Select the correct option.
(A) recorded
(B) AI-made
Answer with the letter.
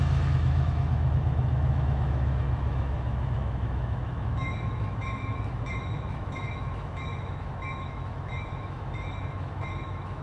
B